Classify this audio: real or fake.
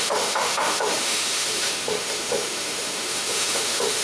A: fake